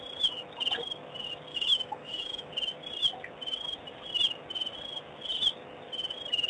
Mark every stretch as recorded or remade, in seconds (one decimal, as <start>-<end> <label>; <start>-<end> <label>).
0.0-1.5 recorded; 1.5-2.5 remade; 2.5-6.5 recorded